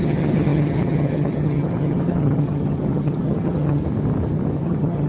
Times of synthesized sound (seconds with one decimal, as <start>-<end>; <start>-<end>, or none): 0.0-3.8; 4.6-5.1